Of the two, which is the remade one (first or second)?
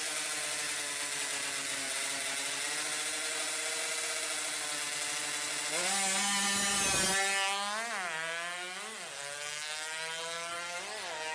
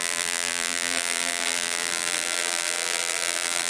second